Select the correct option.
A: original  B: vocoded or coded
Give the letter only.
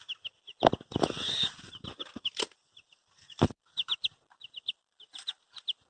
A